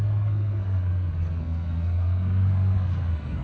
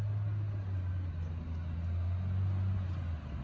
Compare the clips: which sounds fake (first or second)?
first